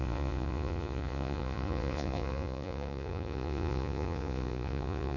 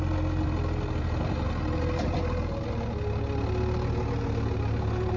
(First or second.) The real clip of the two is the second